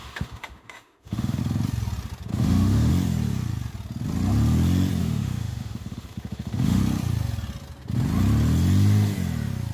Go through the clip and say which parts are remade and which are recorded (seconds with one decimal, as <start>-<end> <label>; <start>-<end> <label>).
0.0-1.4 remade; 1.4-2.3 recorded; 2.3-2.9 remade; 2.9-5.0 recorded; 5.0-6.8 remade; 6.8-9.7 recorded